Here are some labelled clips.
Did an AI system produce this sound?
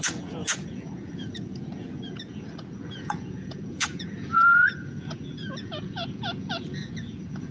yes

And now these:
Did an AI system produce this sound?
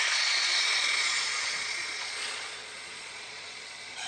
yes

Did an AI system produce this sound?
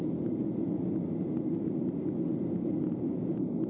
no